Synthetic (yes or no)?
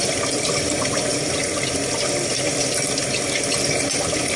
no